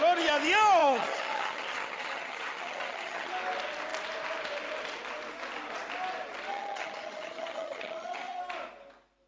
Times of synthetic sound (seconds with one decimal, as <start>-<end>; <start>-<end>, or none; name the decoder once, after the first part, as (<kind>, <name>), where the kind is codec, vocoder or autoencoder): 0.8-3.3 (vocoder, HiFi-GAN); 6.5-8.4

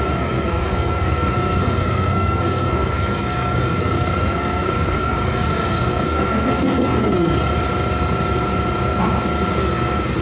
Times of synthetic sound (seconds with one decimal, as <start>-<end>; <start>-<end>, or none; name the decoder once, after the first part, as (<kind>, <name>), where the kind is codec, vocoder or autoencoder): 0.0-7.5 (codec, SNAC)

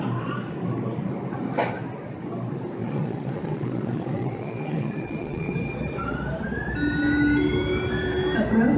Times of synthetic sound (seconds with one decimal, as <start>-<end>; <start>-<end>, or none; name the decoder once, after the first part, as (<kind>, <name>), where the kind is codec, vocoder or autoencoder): 2.8-5.5 (vocoder, Vocos)

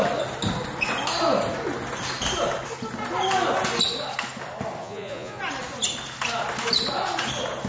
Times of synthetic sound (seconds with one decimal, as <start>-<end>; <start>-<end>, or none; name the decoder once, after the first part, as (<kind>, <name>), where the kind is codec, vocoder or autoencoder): 4.8-5.4 (vocoder, Vocos)

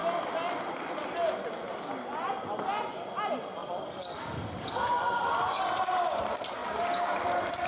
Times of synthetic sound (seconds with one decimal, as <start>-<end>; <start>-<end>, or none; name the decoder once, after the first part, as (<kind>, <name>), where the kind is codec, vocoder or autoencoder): 0.0-0.9 (vocoder, BigVGAN v2); 3.6-4.2; 6.6-7.7

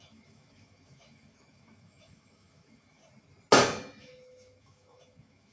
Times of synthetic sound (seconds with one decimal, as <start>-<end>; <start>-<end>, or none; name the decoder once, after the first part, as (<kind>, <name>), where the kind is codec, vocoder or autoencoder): 0.0-3.0 (autoencoder, DAC-VAE); 4.0-5.5

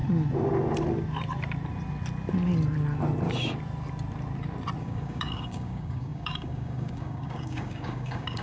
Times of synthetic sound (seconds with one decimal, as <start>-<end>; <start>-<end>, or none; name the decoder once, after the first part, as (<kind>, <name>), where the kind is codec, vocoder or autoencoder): 4.8-8.4 (codec, DAC)

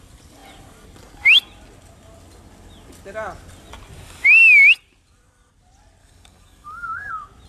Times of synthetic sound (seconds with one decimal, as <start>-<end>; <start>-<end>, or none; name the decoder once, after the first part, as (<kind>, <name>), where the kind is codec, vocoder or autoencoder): 6.0-7.1 (codec, DAC)